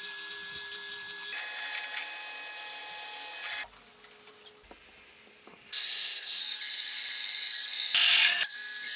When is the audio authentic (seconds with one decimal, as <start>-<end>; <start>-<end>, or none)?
0.0-5.5; 6.4-9.0